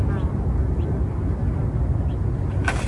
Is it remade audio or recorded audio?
recorded